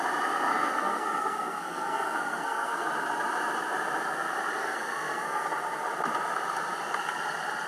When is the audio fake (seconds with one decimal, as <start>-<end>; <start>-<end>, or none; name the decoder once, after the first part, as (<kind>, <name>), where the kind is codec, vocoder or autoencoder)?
0.5-2.9 (codec, SNAC); 4.6-5.5